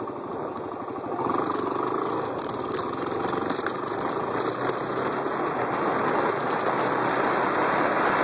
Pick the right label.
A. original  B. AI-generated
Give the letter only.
A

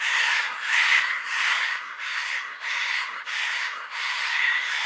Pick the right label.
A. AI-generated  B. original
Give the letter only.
A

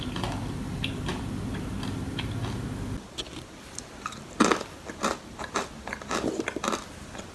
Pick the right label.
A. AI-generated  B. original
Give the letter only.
B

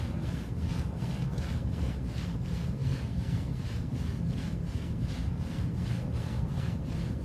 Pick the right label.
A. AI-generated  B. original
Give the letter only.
A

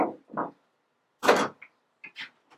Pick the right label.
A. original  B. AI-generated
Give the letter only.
A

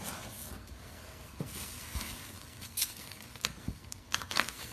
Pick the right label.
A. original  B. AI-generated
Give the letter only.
B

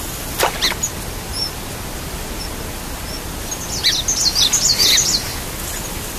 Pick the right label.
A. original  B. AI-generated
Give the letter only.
A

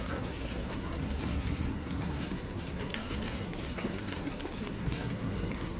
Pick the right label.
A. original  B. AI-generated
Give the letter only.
B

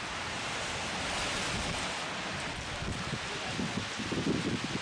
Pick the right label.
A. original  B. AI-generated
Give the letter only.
A